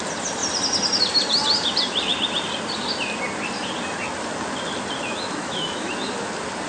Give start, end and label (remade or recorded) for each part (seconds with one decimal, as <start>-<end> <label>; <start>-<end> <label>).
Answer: 0.0-5.0 recorded; 5.0-5.9 remade; 5.9-6.7 recorded